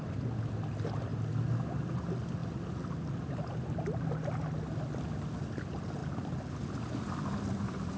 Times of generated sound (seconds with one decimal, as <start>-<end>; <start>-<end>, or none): none